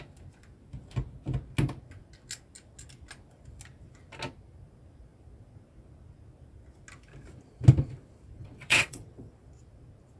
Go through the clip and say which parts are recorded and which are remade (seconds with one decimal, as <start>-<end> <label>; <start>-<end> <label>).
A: 0.0-8.4 recorded; 8.4-9.3 remade; 9.3-10.2 recorded